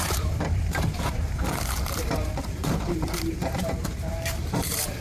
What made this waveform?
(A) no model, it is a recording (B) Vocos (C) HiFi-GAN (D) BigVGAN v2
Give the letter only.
D